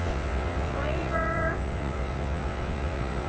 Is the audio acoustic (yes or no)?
no